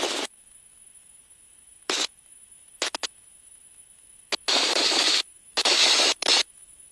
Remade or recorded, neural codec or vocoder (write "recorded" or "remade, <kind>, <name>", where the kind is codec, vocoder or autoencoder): remade, autoencoder, DAC-VAE